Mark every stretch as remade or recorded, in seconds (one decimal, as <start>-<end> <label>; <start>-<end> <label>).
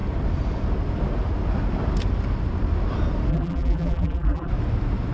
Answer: 0.0-3.3 recorded; 3.3-4.5 remade; 4.5-5.1 recorded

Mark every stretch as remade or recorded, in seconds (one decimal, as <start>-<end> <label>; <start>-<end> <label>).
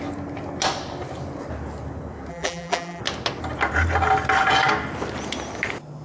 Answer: 0.0-2.3 recorded; 2.3-3.0 remade; 3.0-6.0 recorded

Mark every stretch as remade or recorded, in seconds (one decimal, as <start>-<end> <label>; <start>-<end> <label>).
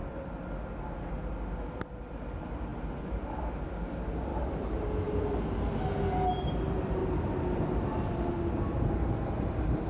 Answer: 0.0-2.7 recorded; 2.7-3.3 remade; 3.3-4.3 recorded; 4.3-4.9 remade; 4.9-9.9 recorded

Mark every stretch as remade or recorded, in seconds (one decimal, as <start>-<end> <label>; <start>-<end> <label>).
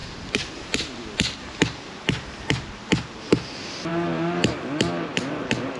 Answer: 0.0-0.6 remade; 0.6-5.8 recorded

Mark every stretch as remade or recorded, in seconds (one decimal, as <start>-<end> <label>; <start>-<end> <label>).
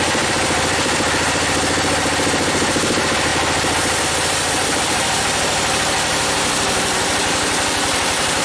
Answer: 0.0-8.4 remade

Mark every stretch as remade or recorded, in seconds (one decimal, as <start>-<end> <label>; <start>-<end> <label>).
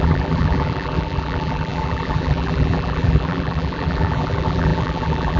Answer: 0.0-5.4 remade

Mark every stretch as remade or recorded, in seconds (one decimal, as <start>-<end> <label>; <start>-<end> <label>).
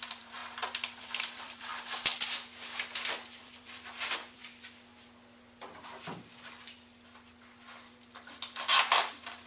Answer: 0.0-0.4 remade; 0.4-1.2 recorded; 1.2-1.7 remade; 1.7-3.4 recorded; 3.4-4.4 remade; 4.4-9.1 recorded; 9.1-9.5 remade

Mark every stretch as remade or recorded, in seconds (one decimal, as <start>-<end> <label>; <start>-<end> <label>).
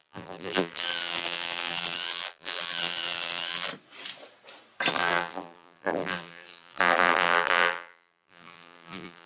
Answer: 0.0-3.7 remade; 3.7-4.9 recorded; 4.9-9.3 remade